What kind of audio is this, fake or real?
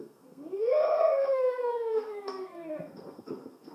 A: fake